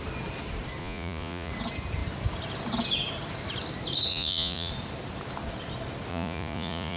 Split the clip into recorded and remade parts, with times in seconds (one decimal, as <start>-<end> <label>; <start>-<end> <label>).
0.0-0.8 recorded; 0.8-1.5 remade; 1.5-4.1 recorded; 4.1-4.7 remade; 4.7-6.1 recorded; 6.1-7.0 remade